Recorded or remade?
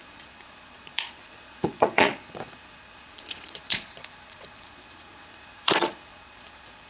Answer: remade